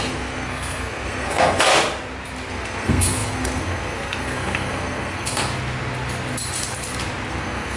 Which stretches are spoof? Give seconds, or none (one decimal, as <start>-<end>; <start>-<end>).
0.0-1.7; 2.5-5.5; 7.3-7.8